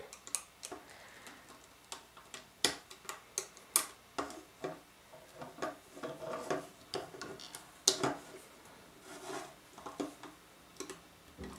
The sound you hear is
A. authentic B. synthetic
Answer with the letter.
A